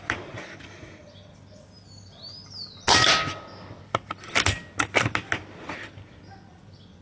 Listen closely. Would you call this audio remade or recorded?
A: recorded